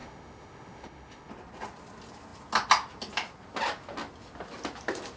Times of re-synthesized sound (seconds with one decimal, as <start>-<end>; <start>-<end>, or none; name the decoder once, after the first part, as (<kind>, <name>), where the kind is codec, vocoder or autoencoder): 0.0-1.3 (autoencoder, DAC-VAE)